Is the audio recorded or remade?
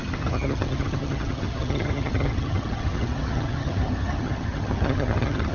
remade